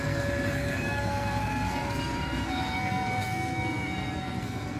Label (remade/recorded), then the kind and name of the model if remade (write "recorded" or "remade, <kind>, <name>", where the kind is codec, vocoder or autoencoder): remade, codec, SNAC